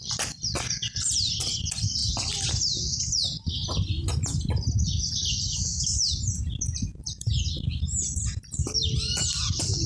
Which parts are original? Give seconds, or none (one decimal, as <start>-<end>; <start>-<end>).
2.0-2.5